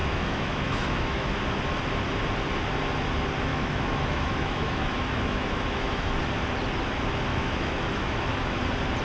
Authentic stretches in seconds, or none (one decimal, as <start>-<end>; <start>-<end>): 1.3-3.5; 6.2-7.3; 8.6-9.0